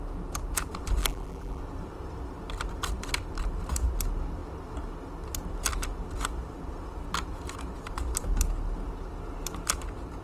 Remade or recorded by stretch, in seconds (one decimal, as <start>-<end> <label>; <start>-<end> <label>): 0.0-1.0 recorded; 1.0-1.6 remade; 1.6-10.2 recorded